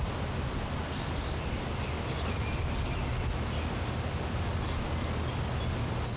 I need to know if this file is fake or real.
real